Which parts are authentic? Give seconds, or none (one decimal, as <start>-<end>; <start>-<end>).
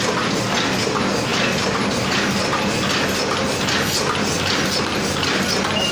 0.0-5.9